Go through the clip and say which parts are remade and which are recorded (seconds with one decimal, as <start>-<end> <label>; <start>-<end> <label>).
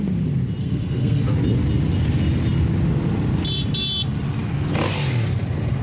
0.0-0.6 recorded; 0.6-1.3 remade; 1.3-5.8 recorded